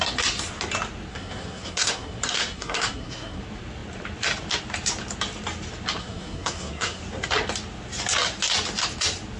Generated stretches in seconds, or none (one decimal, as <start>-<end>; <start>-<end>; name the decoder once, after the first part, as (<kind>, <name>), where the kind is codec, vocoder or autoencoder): 1.1-3.4 (codec, SNAC); 6.0-7.0